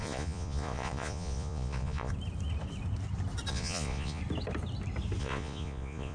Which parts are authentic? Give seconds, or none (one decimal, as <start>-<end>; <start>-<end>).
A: 2.1-3.5; 4.2-5.2